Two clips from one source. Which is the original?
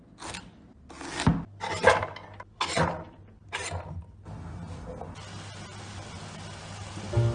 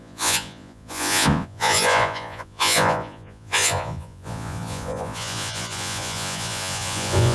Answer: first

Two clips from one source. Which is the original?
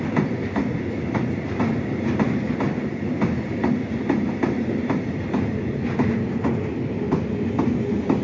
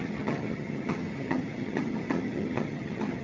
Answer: first